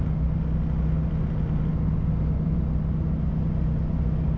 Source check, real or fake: real